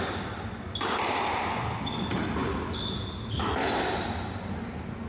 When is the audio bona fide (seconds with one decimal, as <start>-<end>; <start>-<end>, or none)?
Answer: 0.0-5.1